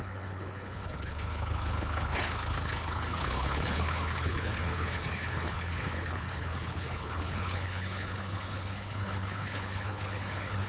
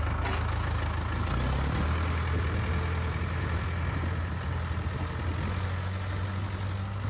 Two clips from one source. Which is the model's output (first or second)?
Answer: first